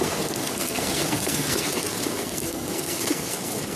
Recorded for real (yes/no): no